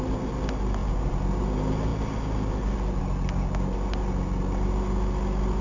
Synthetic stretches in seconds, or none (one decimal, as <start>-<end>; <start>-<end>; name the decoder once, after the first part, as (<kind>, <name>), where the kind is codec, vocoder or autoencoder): none